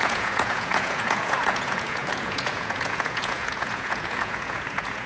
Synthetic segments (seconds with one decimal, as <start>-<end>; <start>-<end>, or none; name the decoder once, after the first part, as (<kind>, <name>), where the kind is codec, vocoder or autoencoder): 0.0-5.1 (vocoder, Vocos)